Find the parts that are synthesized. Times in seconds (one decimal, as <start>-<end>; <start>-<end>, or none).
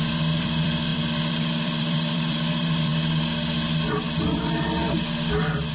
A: 0.0-2.9